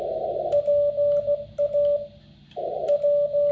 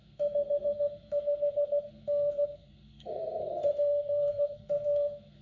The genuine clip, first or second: first